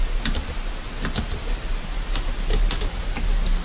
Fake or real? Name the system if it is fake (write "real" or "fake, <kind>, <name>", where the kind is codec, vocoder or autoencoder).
real